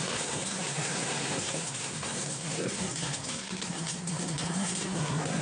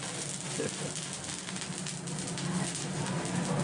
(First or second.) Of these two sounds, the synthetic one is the first